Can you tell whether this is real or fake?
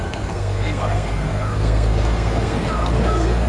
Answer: fake